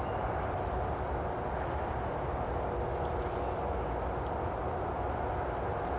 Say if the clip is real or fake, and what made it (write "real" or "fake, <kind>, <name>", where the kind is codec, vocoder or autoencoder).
real